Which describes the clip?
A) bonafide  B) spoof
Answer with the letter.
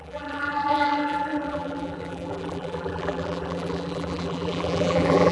B